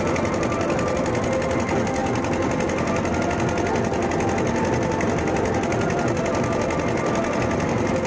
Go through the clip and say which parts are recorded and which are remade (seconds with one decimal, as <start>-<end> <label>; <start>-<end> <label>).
0.0-8.1 recorded